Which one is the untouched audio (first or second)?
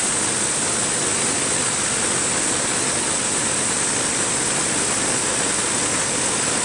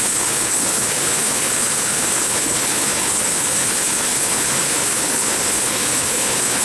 first